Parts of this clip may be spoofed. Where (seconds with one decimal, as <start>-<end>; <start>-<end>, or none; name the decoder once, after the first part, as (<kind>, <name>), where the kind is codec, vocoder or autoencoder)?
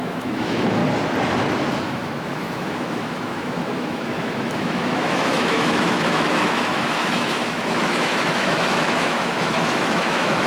0.0-0.8 (autoencoder, DAC-VAE); 1.8-10.5